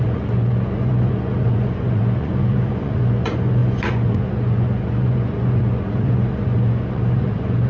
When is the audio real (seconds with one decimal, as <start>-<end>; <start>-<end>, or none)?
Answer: none

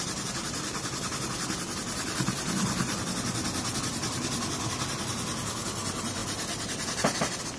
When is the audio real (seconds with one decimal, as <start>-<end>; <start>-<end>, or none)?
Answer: 0.0-7.6

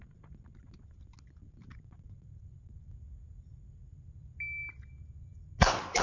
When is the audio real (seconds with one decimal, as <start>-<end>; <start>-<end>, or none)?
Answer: 0.0-6.0

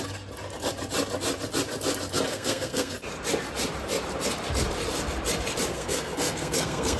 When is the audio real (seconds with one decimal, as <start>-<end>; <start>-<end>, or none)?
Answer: 0.0-2.3; 2.9-5.7